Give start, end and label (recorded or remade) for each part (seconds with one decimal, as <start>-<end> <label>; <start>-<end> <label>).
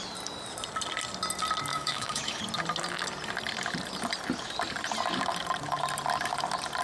0.0-1.7 recorded; 1.7-2.4 remade; 2.4-6.8 recorded